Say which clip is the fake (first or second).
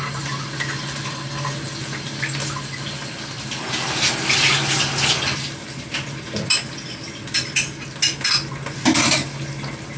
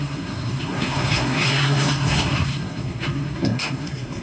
second